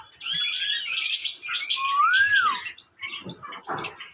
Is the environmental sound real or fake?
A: real